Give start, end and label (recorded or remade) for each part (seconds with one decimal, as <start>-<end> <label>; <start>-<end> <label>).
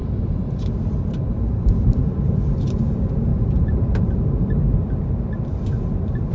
0.0-2.0 remade; 2.0-3.3 recorded; 3.3-4.2 remade; 4.2-6.3 recorded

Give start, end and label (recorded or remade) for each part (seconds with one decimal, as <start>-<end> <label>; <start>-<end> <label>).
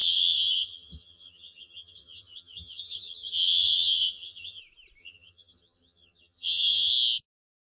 0.0-4.6 remade; 4.6-5.0 recorded; 5.0-6.9 remade; 6.9-7.7 recorded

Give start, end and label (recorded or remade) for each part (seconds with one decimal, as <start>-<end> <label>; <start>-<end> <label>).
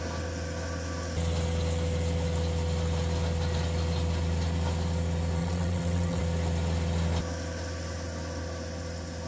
0.0-5.4 recorded; 5.4-6.2 remade; 6.2-9.3 recorded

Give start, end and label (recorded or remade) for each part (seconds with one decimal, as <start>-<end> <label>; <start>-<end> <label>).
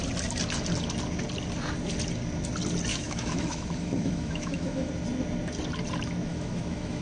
0.0-2.9 recorded; 2.9-4.9 remade; 4.9-6.3 recorded; 6.3-7.0 remade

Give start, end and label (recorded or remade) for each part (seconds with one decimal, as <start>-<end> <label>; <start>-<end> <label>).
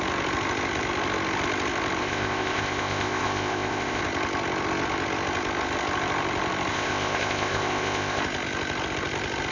0.0-2.0 recorded; 2.0-4.0 remade; 4.0-6.7 recorded; 6.7-8.2 remade; 8.2-9.5 recorded